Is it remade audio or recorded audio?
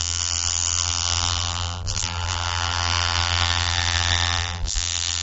remade